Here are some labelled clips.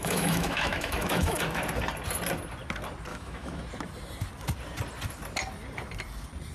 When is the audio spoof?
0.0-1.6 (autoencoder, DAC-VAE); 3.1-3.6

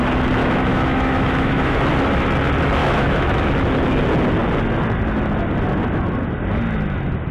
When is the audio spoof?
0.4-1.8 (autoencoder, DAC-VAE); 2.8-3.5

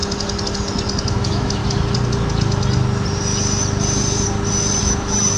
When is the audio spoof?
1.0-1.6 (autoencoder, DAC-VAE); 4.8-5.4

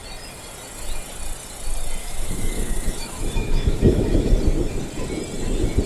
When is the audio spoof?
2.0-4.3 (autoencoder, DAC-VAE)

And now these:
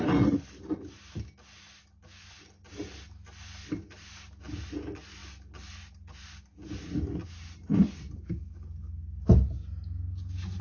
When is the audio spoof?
none

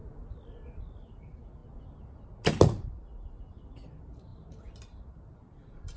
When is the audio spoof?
none